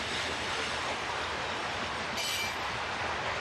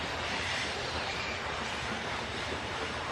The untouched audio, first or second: first